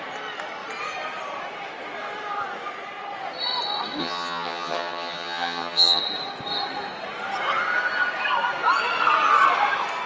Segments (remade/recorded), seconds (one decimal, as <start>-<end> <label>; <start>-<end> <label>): 0.0-4.0 recorded; 4.0-6.0 remade; 6.0-10.1 recorded